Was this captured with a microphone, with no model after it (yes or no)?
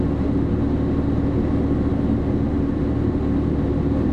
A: yes